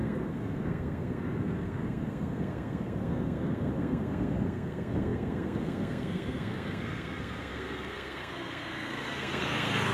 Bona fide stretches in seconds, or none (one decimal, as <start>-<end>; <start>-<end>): none